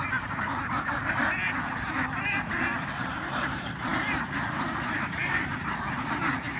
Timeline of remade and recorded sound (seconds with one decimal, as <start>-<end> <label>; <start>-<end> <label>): 0.0-1.2 remade; 1.2-2.3 recorded; 2.3-6.6 remade